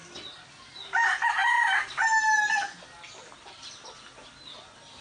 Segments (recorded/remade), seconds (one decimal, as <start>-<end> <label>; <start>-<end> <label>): 0.0-5.0 recorded